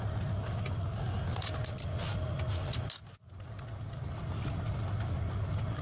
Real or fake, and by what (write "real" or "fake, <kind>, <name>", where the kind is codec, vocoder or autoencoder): real